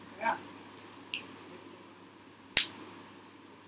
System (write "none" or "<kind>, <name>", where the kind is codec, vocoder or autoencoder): none